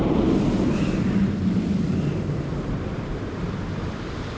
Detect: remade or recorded recorded